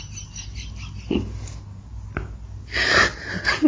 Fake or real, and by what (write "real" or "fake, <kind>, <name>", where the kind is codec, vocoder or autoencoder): real